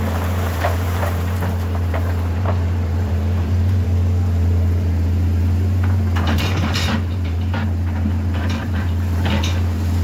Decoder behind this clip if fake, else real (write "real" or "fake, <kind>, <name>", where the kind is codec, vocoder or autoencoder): fake, vocoder, BigVGAN v2